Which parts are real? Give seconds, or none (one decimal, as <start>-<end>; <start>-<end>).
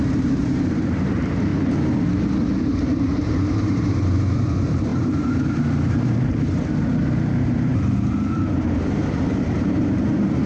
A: 1.5-2.8